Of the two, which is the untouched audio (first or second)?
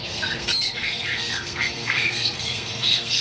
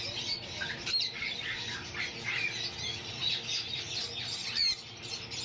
second